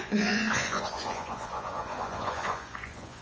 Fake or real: fake